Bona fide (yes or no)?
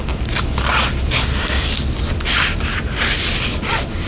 yes